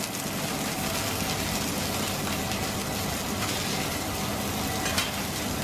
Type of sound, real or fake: real